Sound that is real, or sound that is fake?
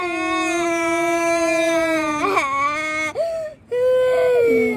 real